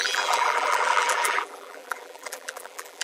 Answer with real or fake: fake